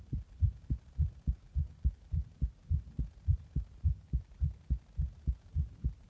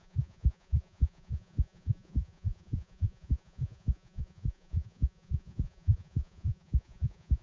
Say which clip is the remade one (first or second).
second